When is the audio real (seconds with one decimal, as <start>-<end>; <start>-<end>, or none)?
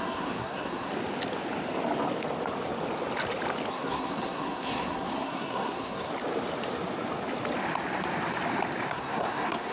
0.9-3.7; 6.1-8.9